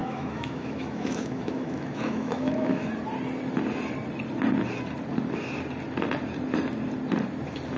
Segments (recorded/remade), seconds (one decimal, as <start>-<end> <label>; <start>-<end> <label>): 0.0-2.9 remade; 2.9-7.8 recorded